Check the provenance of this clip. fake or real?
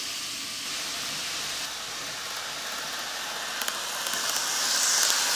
real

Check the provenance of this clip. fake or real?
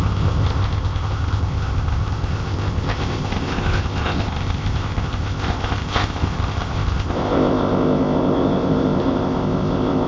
fake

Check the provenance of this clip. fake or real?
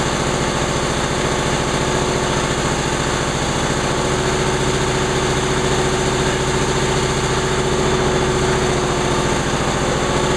real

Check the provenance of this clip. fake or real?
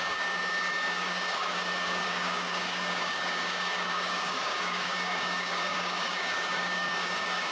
fake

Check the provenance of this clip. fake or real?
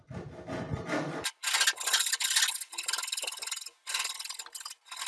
real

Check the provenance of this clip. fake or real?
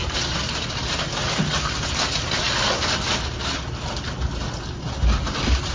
real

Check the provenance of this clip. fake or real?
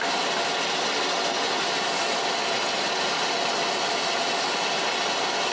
real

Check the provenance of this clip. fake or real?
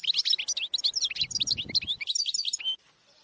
real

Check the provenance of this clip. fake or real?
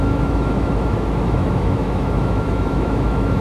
fake